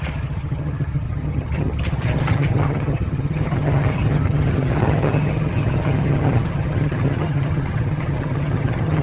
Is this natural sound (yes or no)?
no